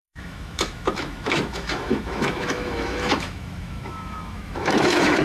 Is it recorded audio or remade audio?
remade